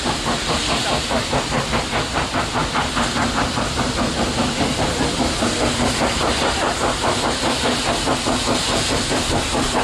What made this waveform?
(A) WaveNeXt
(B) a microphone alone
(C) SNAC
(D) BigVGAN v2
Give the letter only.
B